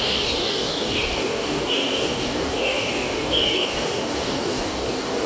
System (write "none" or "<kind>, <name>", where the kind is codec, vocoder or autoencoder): codec, DAC